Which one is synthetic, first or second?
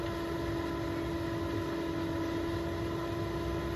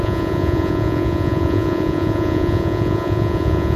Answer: second